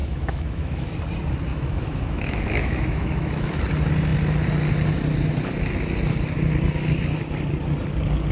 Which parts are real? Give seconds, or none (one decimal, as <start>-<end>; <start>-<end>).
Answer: 1.0-1.5; 3.6-8.3